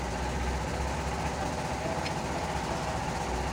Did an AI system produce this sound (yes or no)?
no